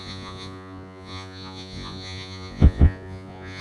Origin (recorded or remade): remade